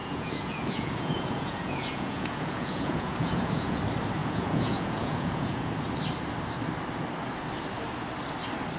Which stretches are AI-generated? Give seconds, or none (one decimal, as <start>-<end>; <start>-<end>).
0.0-3.8; 4.2-5.7